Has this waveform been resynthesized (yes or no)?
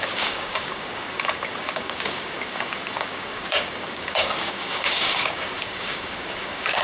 yes